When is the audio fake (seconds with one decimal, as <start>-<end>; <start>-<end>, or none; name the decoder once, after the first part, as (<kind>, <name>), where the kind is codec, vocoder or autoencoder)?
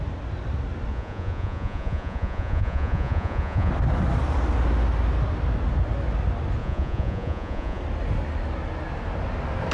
0.9-3.7 (vocoder, Vocos); 6.6-7.8